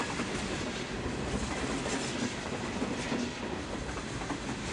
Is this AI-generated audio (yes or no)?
no